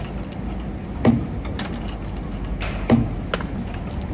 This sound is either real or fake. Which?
real